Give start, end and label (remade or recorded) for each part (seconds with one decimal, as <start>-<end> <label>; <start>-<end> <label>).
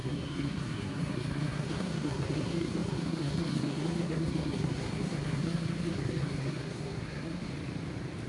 0.0-7.5 remade; 7.5-8.3 recorded